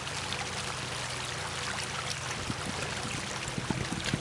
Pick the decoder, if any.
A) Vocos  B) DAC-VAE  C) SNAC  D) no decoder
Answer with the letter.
D